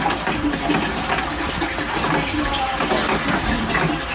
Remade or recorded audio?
recorded